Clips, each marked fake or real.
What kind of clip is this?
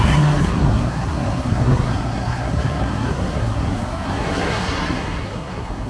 fake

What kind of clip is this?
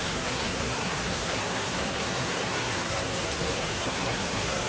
fake